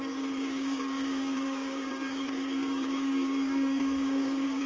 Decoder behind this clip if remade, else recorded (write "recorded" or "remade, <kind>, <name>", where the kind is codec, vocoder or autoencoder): remade, codec, DAC